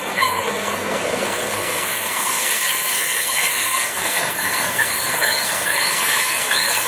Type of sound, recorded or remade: remade